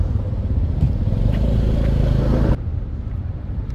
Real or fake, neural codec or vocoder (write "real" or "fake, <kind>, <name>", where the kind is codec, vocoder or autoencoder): fake, vocoder, BigVGAN v2